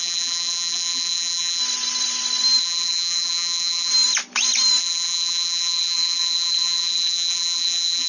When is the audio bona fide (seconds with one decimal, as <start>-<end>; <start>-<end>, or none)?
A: 1.6-2.6; 3.9-4.8